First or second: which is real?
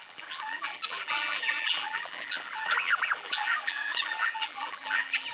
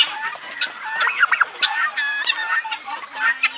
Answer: second